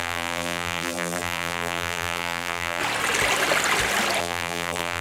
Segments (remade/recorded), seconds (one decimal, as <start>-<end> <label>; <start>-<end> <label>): 0.0-2.8 remade; 2.8-4.2 recorded; 4.2-5.0 remade